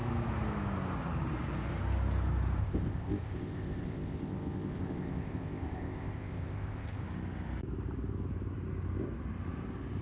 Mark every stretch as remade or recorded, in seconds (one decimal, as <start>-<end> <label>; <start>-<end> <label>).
0.0-2.6 recorded; 2.6-7.0 remade; 7.0-10.0 recorded